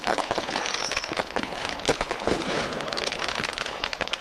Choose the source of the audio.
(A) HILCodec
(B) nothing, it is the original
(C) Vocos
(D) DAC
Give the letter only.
A